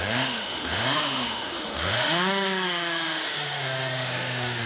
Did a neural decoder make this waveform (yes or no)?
yes